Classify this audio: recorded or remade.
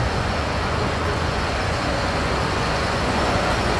remade